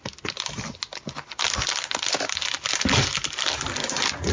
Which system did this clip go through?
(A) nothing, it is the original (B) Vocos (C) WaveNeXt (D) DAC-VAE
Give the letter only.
A